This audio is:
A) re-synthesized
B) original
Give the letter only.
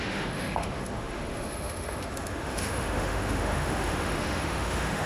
A